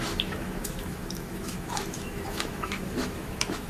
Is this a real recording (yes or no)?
no